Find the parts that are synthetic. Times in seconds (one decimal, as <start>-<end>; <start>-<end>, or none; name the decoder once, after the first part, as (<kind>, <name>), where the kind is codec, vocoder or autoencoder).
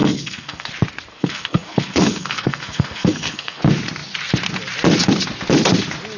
0.0-0.7 (codec, SNAC); 1.1-3.6